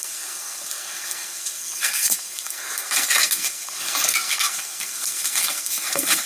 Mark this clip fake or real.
fake